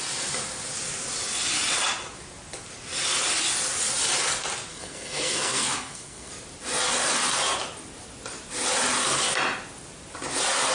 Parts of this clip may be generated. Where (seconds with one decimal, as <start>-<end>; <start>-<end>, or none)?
4.7-6.3